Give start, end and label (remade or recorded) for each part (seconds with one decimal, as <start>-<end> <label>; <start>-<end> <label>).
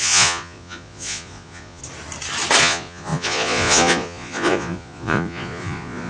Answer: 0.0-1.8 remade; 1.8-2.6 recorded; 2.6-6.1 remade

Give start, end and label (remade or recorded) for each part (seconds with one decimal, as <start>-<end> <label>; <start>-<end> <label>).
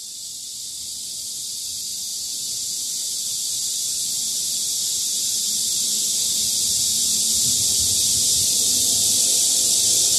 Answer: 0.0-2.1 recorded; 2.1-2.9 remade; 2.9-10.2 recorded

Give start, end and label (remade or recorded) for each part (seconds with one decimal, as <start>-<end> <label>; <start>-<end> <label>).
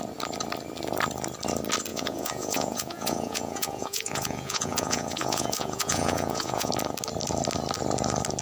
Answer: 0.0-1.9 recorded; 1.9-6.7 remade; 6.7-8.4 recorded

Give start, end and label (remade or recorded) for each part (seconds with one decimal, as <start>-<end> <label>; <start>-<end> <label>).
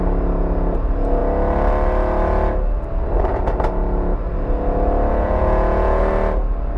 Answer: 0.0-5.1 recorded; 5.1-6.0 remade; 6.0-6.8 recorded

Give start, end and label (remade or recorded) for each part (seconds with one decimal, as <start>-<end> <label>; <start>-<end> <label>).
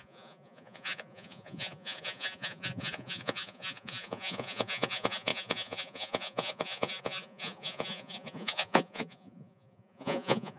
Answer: 0.0-10.6 remade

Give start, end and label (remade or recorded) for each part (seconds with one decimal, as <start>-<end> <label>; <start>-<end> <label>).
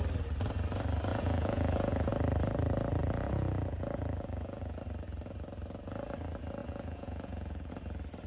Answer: 0.0-1.1 recorded; 1.1-2.1 remade; 2.1-3.0 recorded; 3.0-4.8 remade; 4.8-6.6 recorded; 6.6-7.7 remade; 7.7-8.3 recorded